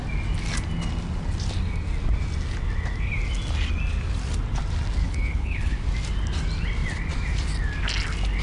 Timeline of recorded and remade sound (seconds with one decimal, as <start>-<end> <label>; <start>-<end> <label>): 0.0-5.0 recorded; 5.0-5.8 remade; 5.8-8.4 recorded